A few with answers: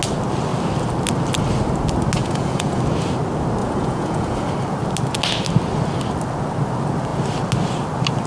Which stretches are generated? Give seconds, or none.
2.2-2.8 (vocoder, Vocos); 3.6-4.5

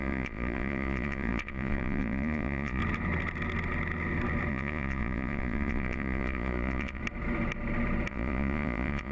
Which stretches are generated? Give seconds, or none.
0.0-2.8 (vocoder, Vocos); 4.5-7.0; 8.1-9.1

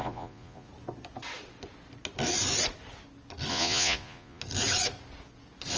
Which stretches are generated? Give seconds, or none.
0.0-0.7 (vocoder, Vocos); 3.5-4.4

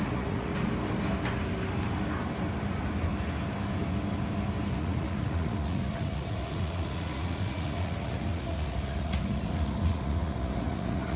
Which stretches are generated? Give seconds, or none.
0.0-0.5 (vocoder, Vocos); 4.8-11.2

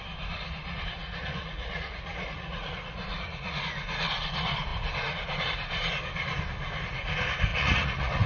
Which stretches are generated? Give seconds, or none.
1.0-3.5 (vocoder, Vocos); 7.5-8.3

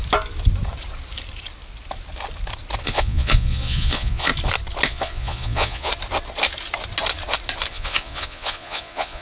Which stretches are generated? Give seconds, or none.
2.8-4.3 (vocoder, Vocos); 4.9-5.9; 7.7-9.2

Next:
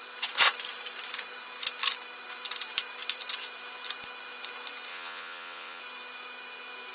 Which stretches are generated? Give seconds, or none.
4.9-5.8 (vocoder, Vocos)